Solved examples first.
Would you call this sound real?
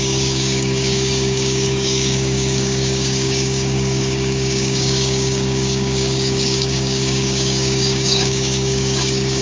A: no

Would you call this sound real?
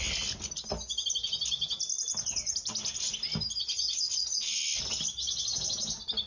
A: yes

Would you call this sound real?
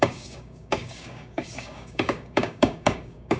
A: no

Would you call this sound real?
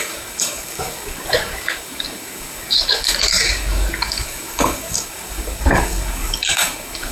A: no